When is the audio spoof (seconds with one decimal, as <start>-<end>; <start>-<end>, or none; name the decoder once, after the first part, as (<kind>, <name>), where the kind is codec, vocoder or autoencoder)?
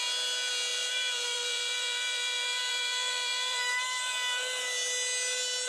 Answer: 0.7-4.1 (vocoder, BigVGAN v2)